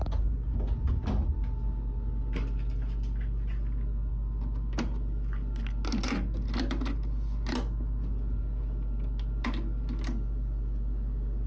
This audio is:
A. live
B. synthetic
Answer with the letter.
A